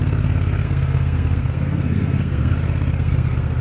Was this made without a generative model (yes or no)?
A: no